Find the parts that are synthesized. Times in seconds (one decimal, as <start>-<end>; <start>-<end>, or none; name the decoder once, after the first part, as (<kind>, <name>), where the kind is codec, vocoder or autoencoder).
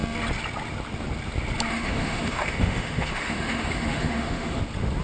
1.7-4.6 (autoencoder, DAC-VAE)